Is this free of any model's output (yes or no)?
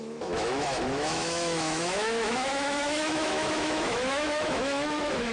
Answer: no